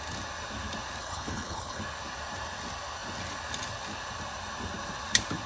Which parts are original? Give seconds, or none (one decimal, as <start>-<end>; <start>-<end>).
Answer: 0.0-1.0; 1.8-5.5